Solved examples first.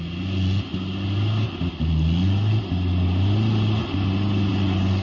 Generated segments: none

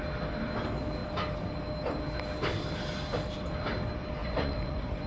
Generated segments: 4.2-5.1 (vocoder, Vocos)

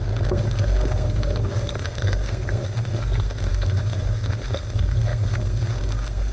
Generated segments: 0.0-6.3 (codec, SNAC)